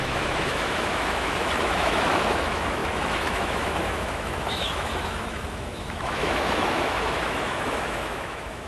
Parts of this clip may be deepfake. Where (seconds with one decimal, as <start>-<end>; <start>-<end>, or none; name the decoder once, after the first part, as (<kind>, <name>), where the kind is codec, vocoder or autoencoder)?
0.0-8.7 (autoencoder, DAC-VAE)